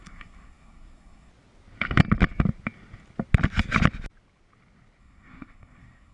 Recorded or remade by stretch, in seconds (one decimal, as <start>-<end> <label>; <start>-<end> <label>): 0.0-1.3 remade; 1.3-5.0 recorded; 5.0-6.1 remade